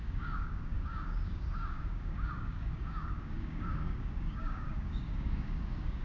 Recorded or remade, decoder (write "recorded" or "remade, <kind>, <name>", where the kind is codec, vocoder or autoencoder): remade, codec, DAC